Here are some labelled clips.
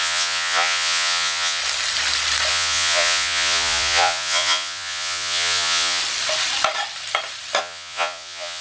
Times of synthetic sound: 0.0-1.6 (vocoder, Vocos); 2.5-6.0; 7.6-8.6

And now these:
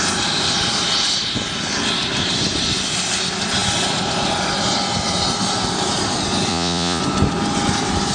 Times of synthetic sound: 6.5-7.0 (vocoder, Vocos)